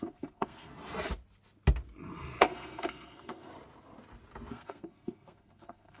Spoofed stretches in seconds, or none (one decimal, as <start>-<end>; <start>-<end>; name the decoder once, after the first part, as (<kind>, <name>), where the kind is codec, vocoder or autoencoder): 0.0-0.7 (codec, SNAC); 2.4-3.5; 4.5-6.0